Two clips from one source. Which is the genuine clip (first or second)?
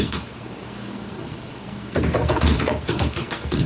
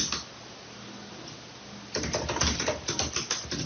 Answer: second